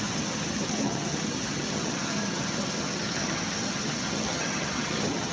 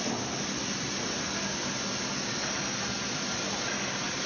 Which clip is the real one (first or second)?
second